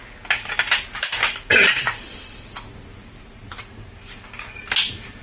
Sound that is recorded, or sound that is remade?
recorded